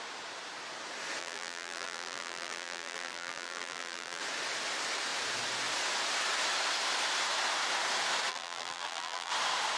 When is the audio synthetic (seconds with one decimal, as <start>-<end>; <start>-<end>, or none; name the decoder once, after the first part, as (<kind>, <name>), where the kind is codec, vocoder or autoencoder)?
1.2-4.2 (vocoder, BigVGAN v2); 8.3-9.3